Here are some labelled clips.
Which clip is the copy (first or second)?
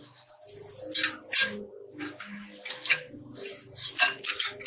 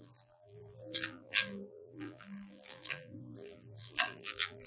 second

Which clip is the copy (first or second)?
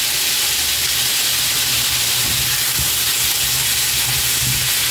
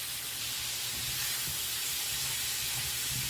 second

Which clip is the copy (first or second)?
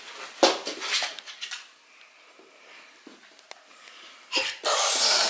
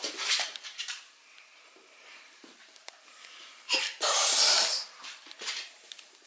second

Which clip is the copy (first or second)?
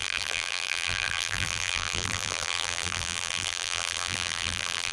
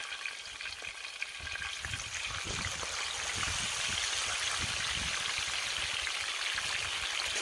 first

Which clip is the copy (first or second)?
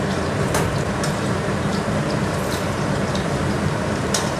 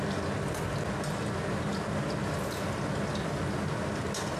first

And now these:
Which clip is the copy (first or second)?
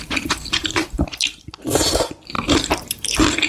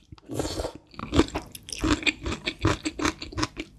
first